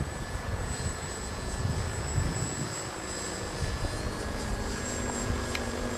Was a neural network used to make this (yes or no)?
yes